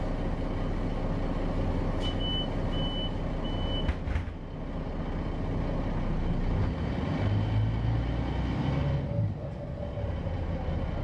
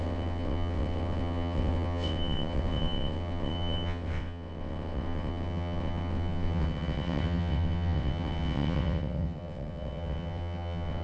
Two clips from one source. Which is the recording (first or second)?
first